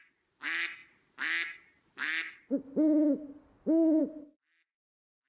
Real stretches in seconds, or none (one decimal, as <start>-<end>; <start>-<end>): 0.0-5.3